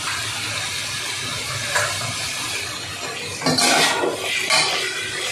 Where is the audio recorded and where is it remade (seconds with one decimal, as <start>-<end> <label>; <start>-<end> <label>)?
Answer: 0.0-5.3 recorded